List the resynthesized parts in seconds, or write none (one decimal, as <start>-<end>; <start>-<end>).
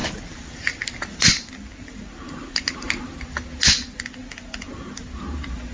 none